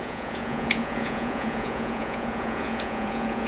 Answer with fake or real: fake